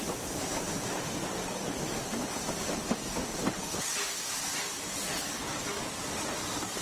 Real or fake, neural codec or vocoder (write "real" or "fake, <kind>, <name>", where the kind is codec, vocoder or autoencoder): real